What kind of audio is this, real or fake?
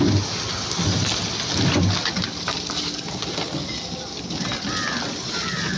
real